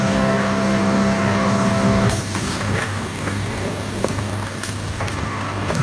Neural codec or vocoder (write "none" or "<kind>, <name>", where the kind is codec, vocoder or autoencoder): codec, DAC